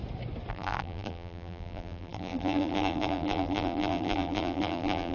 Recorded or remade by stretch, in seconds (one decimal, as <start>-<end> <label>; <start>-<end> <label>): 0.0-0.5 recorded; 0.5-5.1 remade